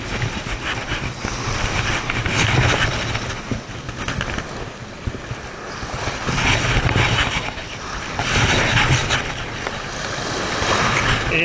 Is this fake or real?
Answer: real